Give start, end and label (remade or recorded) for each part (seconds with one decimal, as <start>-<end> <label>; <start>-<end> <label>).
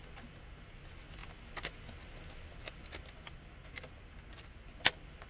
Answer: 0.0-5.3 recorded